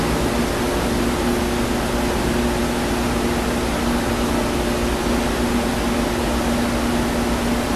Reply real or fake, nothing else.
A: real